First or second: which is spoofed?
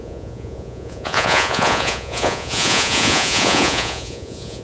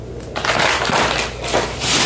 first